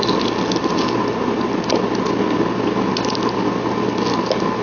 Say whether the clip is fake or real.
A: real